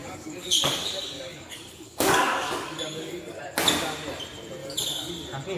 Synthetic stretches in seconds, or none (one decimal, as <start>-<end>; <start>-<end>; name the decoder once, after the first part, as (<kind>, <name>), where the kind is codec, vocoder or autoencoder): 0.0-3.4 (codec, DAC); 4.6-5.1